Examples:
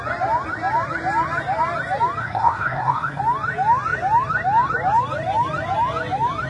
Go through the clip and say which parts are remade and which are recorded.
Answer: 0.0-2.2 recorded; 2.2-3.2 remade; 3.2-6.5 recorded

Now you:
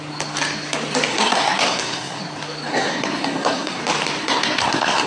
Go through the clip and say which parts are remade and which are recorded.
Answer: 0.0-1.1 recorded; 1.1-2.2 remade; 2.2-2.7 recorded; 2.7-3.8 remade; 3.8-4.2 recorded; 4.2-5.1 remade

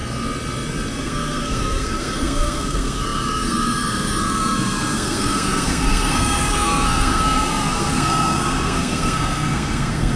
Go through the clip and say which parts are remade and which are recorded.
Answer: 0.0-1.0 recorded; 1.0-10.2 remade

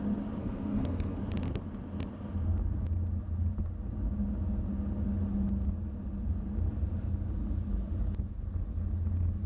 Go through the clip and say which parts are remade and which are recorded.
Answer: 0.0-0.4 recorded; 0.4-1.2 remade; 1.2-9.5 recorded

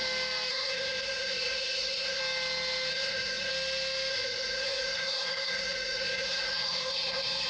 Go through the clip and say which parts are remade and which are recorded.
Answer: 0.0-0.5 recorded; 0.5-2.2 remade; 2.2-2.9 recorded; 2.9-3.5 remade; 3.5-4.1 recorded; 4.1-7.5 remade

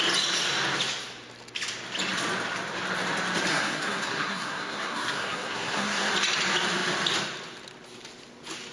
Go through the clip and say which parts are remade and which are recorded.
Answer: 0.0-3.5 recorded; 3.5-6.1 remade; 6.1-8.7 recorded